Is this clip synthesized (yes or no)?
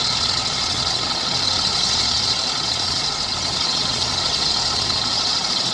yes